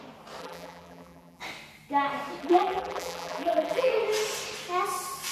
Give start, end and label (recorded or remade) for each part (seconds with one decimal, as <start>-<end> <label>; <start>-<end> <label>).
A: 0.0-0.4 recorded; 0.4-1.4 remade; 1.4-2.4 recorded; 2.4-3.9 remade; 3.9-5.3 recorded